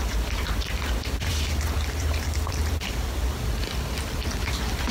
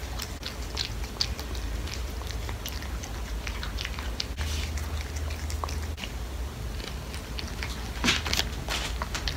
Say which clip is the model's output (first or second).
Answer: first